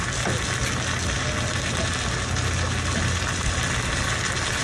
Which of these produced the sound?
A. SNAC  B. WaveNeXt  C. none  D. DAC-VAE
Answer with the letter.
C